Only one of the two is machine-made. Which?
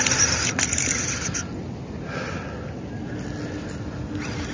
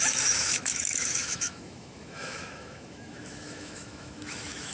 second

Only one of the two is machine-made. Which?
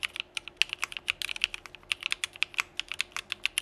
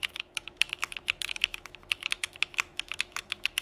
second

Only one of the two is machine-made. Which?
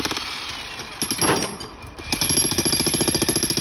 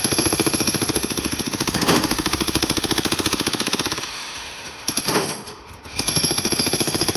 second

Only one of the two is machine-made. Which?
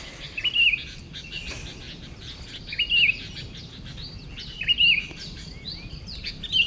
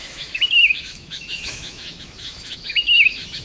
second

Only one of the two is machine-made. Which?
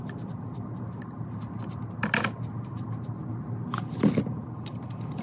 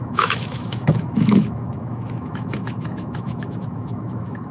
second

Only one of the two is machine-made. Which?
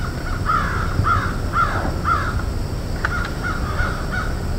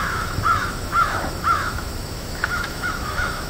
second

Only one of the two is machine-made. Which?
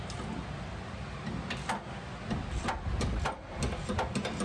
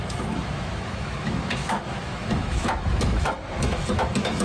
second